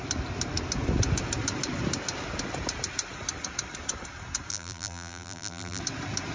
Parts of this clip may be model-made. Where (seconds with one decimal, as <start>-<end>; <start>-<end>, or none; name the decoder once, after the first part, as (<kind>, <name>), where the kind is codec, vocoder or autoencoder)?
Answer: 4.5-5.8 (vocoder, BigVGAN v2)